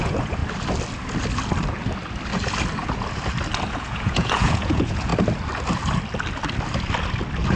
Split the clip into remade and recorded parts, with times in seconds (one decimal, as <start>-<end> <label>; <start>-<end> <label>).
0.0-0.4 remade; 0.4-3.7 recorded; 3.7-5.1 remade; 5.1-7.6 recorded

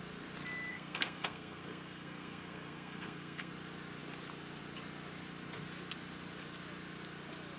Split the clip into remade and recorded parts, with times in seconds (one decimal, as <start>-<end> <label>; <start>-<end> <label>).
0.0-0.7 recorded; 0.7-3.5 remade; 3.5-7.6 recorded